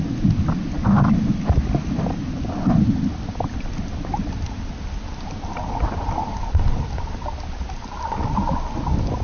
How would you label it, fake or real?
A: real